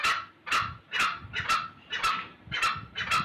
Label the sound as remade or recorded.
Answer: recorded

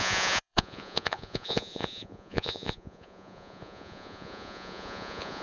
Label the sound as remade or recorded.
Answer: remade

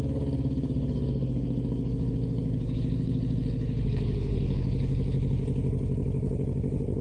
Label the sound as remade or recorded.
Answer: remade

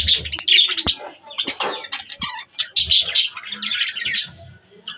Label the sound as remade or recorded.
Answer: recorded